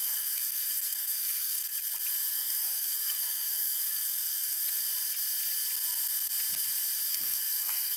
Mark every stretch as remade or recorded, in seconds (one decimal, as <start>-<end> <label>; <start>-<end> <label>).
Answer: 0.0-1.7 remade; 1.7-2.3 recorded; 2.3-4.6 remade; 4.6-7.1 recorded; 7.1-8.0 remade